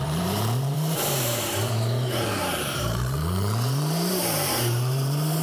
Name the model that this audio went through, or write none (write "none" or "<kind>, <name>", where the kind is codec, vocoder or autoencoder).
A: vocoder, BigVGAN v2